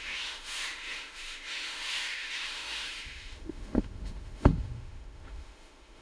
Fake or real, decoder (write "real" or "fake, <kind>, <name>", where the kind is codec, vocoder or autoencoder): fake, autoencoder, DAC-VAE